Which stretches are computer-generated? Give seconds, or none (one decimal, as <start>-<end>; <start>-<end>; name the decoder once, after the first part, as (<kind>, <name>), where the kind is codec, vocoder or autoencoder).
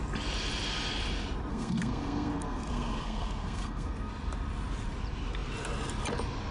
1.5-4.1 (codec, SNAC)